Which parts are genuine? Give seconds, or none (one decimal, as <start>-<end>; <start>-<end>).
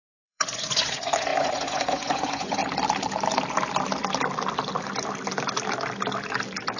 2.6-6.8